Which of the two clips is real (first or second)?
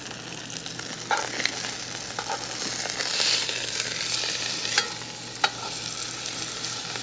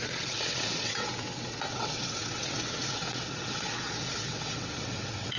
first